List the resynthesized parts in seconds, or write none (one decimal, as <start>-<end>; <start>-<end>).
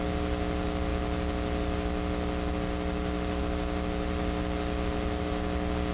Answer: none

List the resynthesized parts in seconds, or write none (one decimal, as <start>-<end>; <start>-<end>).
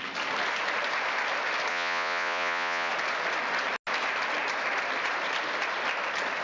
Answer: 1.7-2.9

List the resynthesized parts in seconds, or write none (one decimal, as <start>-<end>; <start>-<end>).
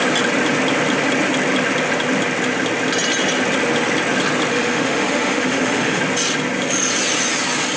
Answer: 4.5-6.0